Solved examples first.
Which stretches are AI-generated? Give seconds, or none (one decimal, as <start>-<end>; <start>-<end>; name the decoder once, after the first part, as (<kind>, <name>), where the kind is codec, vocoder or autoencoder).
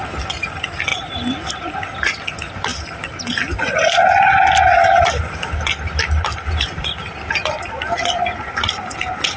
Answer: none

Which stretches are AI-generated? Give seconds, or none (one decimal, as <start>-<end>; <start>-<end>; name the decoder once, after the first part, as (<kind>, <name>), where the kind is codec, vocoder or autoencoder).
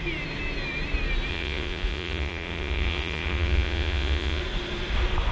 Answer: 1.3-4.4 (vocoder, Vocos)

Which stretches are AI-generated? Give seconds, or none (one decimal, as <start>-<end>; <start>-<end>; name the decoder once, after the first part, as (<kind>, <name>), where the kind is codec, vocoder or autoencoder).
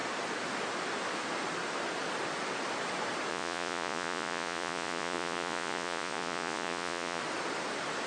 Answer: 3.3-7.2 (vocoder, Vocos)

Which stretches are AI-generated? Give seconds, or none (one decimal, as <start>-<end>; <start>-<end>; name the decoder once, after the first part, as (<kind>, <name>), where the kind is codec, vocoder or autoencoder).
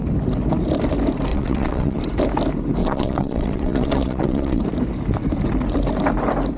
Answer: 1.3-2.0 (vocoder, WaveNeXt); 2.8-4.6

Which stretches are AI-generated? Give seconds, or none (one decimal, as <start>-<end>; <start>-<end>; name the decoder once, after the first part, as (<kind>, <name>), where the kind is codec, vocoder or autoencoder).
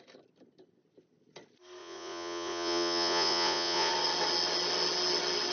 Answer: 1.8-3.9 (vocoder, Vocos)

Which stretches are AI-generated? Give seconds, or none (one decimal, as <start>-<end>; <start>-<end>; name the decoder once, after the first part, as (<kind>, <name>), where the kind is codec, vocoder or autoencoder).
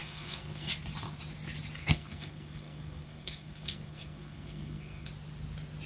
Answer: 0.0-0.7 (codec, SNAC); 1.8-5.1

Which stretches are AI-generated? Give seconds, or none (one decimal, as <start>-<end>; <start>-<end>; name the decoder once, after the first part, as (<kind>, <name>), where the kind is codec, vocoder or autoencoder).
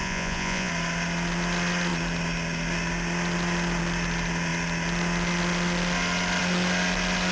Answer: 0.0-0.7 (vocoder, Vocos)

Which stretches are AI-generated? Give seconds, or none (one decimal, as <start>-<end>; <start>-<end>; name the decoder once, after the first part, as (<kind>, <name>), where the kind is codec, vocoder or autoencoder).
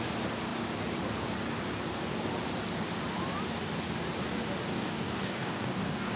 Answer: 4.7-6.2 (codec, DAC)